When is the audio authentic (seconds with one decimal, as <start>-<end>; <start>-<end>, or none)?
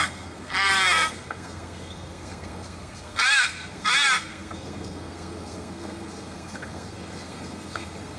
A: none